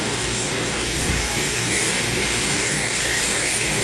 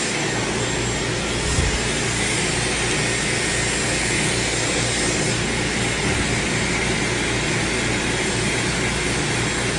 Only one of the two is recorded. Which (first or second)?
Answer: second